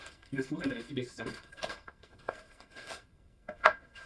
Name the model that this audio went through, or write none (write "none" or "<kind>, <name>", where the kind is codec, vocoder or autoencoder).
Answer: codec, SNAC